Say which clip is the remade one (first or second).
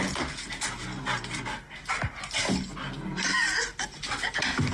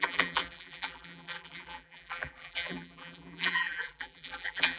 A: second